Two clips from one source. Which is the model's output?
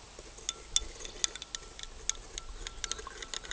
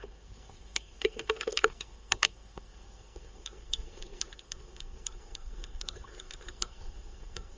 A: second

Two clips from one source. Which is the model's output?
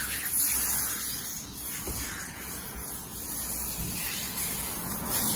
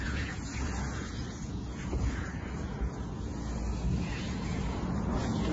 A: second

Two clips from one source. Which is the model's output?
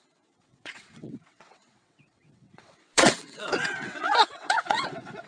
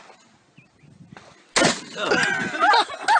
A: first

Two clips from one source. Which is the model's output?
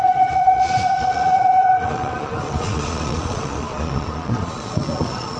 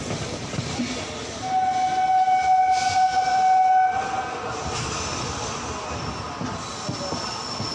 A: first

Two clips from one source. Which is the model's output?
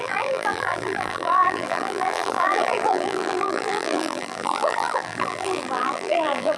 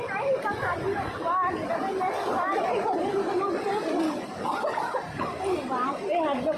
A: first